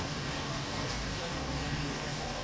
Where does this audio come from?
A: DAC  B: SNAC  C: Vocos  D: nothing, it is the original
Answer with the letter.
A